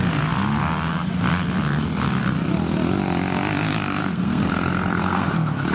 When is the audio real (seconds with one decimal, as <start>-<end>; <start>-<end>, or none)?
0.0-4.0; 5.3-5.7